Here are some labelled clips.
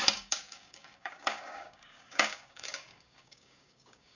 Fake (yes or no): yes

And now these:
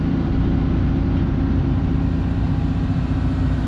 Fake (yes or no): no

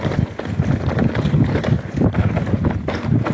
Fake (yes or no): no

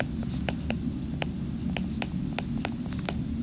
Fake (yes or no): no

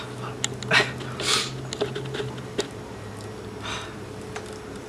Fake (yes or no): no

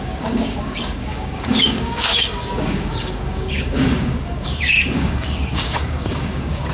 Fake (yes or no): yes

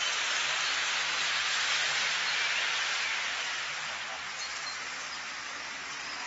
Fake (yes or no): no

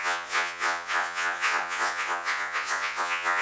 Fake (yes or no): yes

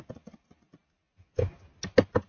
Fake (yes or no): no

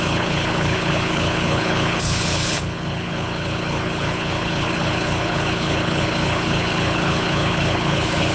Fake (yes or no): yes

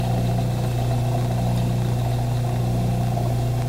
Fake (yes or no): no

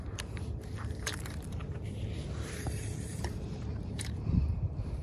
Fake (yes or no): yes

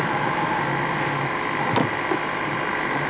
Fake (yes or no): no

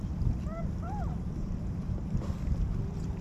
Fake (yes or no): yes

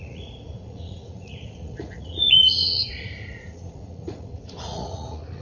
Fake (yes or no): yes